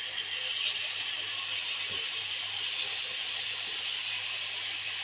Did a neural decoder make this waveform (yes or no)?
no